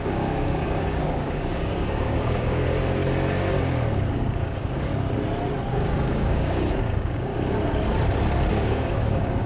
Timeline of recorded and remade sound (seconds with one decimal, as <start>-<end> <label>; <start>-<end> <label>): 0.0-3.0 remade; 3.0-4.1 recorded; 4.1-4.9 remade; 4.9-5.7 recorded; 5.7-7.3 remade; 7.3-8.5 recorded; 8.5-9.5 remade